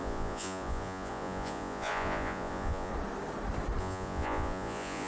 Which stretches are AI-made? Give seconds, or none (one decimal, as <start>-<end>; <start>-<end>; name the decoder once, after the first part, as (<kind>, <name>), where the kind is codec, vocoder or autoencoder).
0.0-2.9 (vocoder, Vocos); 3.8-5.1